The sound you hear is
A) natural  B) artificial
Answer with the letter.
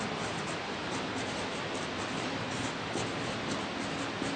A